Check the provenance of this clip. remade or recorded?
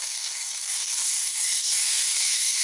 remade